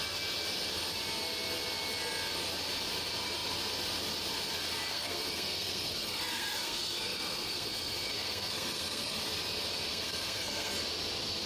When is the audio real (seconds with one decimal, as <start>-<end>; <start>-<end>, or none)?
0.0-4.9; 9.2-9.9; 10.7-11.5